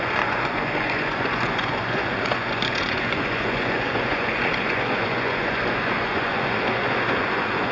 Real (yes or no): no